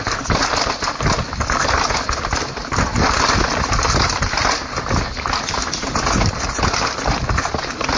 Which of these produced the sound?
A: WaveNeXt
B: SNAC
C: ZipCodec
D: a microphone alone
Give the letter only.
D